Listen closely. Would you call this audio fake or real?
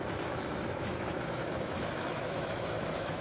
fake